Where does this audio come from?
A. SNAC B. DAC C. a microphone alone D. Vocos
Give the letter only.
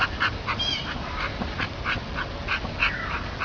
C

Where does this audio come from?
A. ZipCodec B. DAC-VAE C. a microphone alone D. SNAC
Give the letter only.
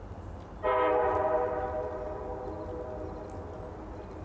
C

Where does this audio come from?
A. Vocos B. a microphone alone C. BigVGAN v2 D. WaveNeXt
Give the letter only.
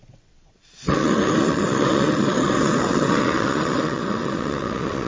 D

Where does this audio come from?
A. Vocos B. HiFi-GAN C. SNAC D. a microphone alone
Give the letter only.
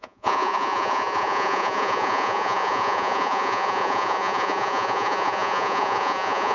A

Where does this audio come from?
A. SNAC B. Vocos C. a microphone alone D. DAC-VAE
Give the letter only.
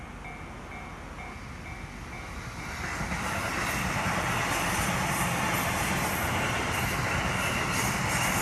C